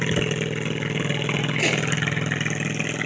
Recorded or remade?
recorded